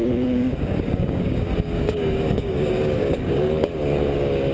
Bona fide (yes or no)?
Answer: no